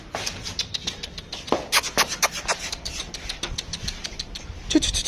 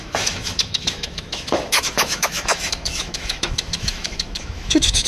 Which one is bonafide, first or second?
first